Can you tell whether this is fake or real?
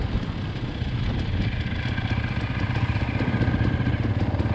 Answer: real